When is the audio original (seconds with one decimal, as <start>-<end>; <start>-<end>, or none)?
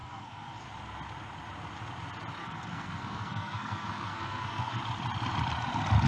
0.6-2.4; 4.8-6.1